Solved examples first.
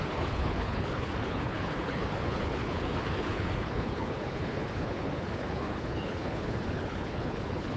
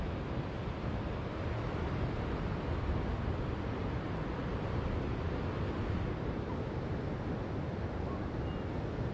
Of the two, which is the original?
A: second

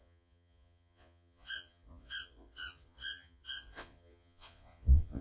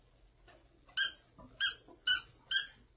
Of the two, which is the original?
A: second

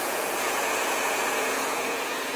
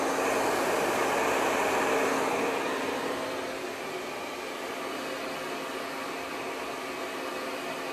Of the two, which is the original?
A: second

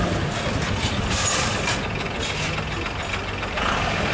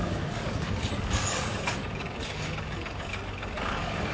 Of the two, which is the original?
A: first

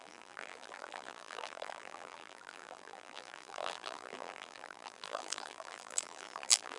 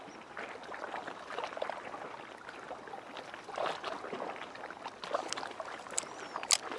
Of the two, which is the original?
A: second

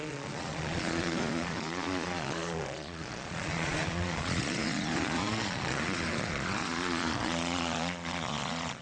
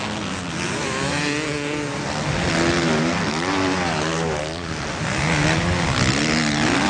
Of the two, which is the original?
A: second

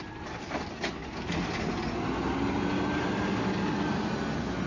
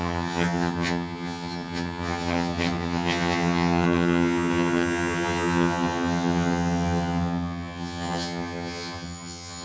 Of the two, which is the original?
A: first